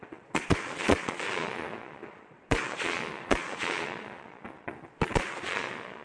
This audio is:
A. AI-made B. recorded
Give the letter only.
A